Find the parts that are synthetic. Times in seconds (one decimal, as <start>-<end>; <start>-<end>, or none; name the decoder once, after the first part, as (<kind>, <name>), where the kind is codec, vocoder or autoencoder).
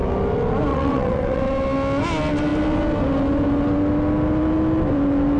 0.7-1.4 (vocoder, WaveNeXt)